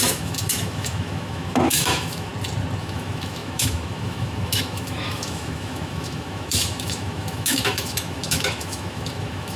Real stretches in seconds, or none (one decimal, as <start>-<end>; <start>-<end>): 2.3-2.8